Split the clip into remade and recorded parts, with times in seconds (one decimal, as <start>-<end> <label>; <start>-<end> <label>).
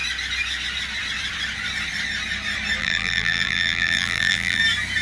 0.0-2.8 recorded; 2.8-4.6 remade; 4.6-5.0 recorded